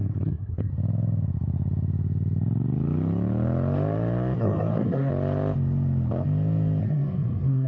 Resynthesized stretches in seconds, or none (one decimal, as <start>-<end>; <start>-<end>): 0.0-0.7; 4.4-5.1; 6.8-7.7